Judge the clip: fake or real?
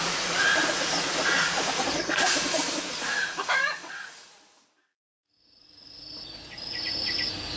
fake